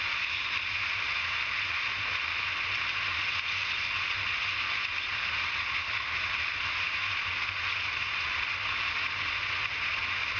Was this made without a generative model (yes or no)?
yes